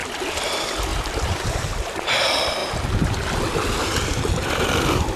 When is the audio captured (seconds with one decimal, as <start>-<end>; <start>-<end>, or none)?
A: 0.0-0.9; 2.1-2.6; 3.4-5.2